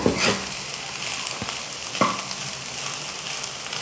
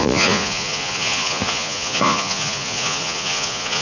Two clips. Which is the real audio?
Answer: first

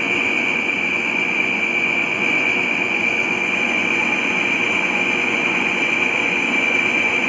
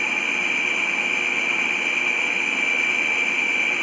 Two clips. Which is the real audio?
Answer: second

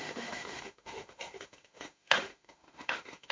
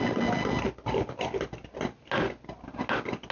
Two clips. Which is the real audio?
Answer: second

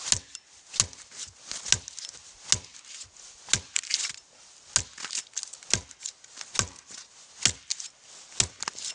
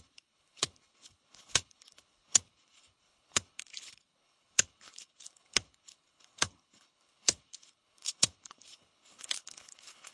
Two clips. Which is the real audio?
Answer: first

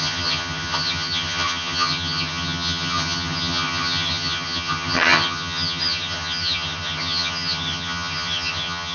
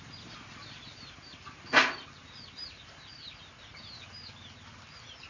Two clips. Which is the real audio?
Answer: second